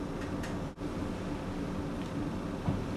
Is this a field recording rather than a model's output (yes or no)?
yes